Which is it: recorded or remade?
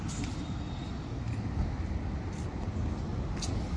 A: recorded